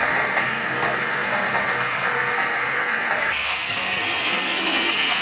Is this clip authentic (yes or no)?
no